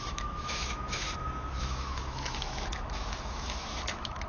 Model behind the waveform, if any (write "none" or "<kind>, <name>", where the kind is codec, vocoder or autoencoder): autoencoder, DAC-VAE